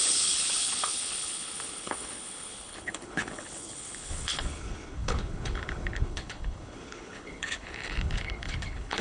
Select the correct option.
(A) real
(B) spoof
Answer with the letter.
B